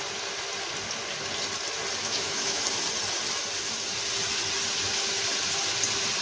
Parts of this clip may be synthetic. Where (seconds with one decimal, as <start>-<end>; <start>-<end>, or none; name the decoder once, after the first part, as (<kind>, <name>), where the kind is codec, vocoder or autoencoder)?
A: 2.0-2.6 (autoencoder, DAC-VAE)